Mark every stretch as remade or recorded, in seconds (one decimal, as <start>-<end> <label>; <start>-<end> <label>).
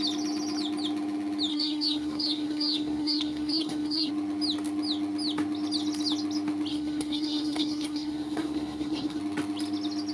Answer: 0.0-1.5 recorded; 1.5-4.1 remade; 4.1-6.7 recorded; 6.7-9.2 remade; 9.2-10.1 recorded